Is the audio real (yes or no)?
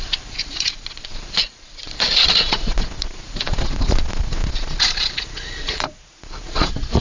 no